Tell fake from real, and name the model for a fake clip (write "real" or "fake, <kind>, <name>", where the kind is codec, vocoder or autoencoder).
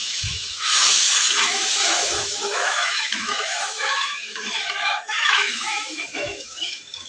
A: fake, autoencoder, DAC-VAE